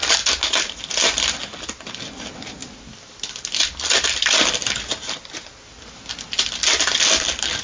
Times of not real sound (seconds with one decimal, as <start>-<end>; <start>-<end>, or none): none